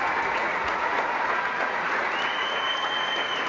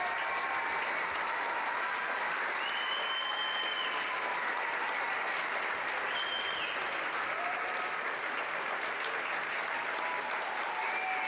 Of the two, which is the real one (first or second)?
second